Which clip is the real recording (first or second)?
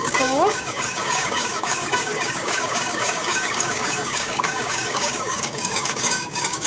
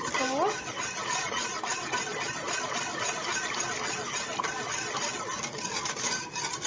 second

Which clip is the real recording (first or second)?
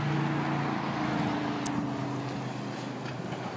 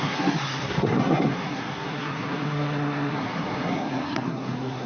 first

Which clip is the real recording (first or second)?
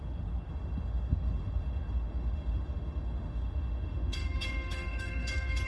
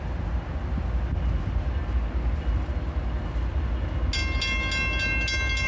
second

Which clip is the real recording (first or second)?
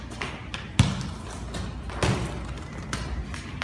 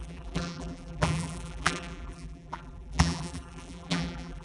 first